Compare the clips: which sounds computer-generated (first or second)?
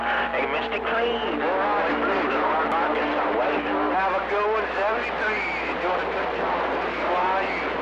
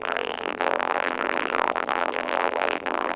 second